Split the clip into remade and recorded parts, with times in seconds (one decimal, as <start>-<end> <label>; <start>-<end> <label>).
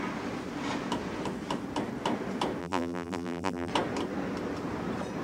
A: 0.0-2.6 recorded; 2.6-3.7 remade; 3.7-5.2 recorded